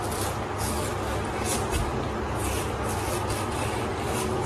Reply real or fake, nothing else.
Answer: real